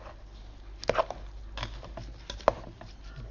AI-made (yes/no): no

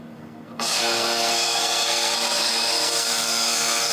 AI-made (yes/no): yes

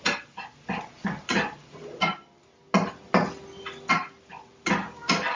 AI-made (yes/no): no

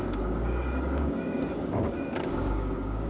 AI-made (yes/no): yes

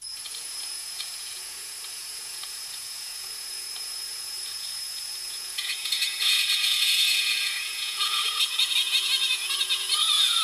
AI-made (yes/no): yes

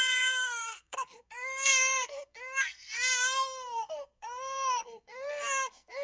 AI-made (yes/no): yes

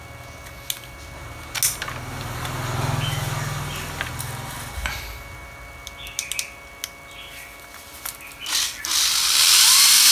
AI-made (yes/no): no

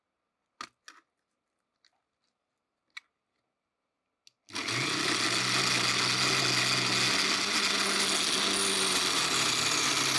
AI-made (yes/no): no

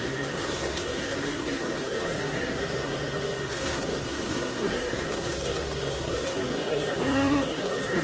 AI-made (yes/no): yes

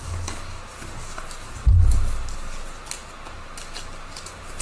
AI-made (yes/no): no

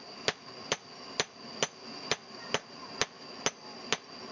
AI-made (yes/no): no